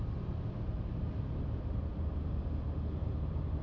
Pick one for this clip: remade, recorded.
recorded